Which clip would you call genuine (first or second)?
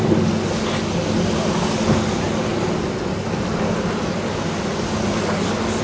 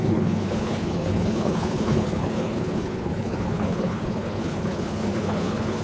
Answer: first